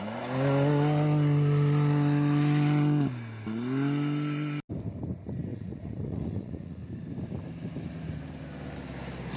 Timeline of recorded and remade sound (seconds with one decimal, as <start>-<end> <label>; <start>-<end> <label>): 0.0-5.5 recorded; 5.5-6.8 remade; 6.8-9.4 recorded